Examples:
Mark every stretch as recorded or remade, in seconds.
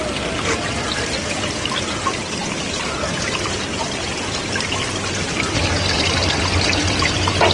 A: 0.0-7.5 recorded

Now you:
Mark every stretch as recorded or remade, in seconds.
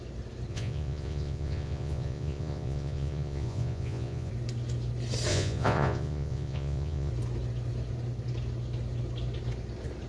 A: 0.0-0.5 recorded; 0.5-4.3 remade; 4.3-5.3 recorded; 5.3-7.1 remade; 7.1-10.1 recorded